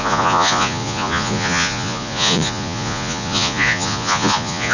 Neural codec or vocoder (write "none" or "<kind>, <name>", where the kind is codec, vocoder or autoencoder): vocoder, Vocos